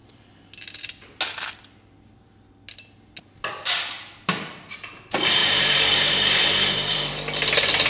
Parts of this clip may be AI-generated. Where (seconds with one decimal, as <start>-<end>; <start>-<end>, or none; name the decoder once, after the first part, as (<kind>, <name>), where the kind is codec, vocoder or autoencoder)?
5.4-7.1 (vocoder, BigVGAN v2)